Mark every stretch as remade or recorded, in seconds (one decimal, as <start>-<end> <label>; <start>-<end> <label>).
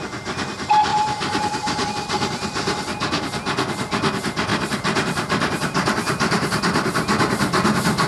0.0-0.9 recorded; 0.9-1.9 remade; 1.9-4.5 recorded; 4.5-6.6 remade; 6.6-8.1 recorded